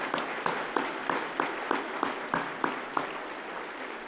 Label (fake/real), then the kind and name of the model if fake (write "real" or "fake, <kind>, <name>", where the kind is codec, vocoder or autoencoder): real